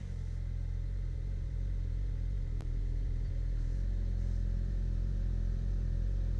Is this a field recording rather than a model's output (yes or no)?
no